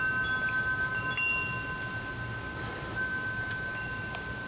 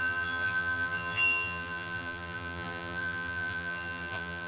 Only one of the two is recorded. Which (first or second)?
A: first